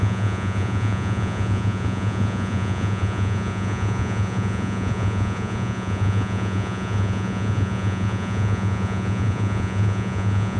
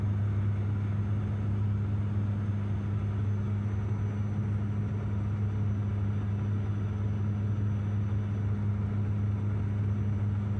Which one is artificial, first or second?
first